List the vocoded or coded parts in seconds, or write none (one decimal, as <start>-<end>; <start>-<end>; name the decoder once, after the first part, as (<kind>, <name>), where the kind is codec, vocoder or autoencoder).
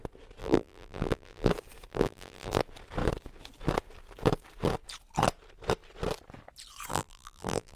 0.4-1.5 (vocoder, BigVGAN v2); 1.9-2.6; 6.9-7.8